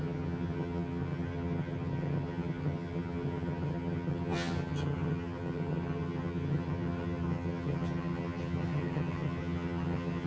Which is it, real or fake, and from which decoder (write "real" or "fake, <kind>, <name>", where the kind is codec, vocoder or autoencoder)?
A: fake, vocoder, HiFi-GAN